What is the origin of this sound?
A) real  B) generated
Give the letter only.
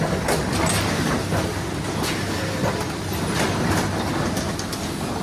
A